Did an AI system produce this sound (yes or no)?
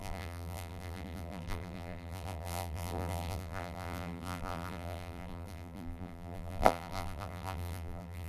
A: yes